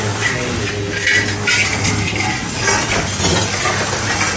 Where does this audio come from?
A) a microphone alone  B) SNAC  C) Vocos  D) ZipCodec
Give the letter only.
A